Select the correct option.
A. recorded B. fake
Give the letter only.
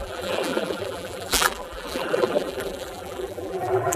B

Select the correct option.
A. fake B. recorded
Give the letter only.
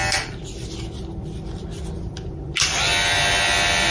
B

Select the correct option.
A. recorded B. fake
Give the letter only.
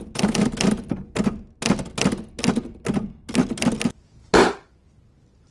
A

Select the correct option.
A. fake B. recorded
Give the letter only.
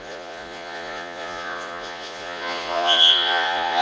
A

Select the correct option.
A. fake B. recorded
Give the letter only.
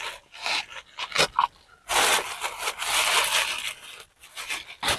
B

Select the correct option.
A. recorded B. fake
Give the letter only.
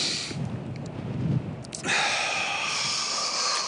A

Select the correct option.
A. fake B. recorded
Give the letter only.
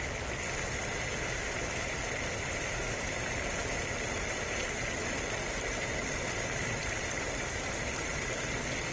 B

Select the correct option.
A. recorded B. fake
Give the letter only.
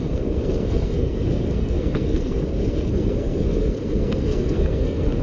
B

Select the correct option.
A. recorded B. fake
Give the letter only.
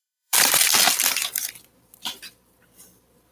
B